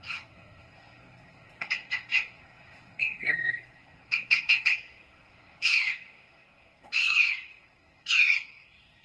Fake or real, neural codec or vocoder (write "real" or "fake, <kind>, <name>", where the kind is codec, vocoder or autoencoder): fake, codec, SNAC